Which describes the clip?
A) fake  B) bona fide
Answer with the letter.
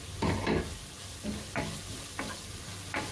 B